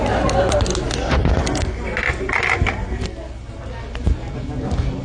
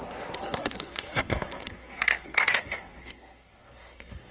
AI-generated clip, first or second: second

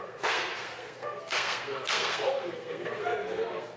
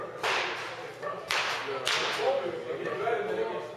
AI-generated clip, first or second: first